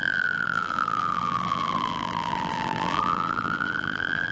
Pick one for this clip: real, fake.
fake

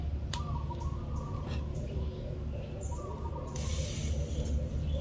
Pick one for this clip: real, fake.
real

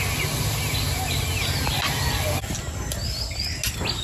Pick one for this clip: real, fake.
real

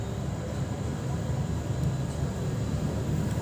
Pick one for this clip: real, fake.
real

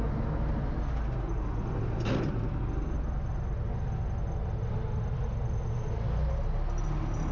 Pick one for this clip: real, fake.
real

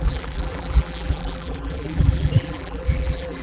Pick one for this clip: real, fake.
fake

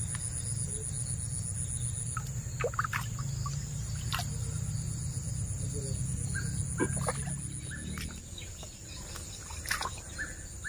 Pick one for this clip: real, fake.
real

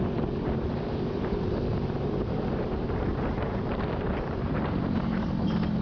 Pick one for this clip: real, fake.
fake